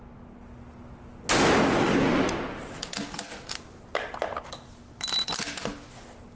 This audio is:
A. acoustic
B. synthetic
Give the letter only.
A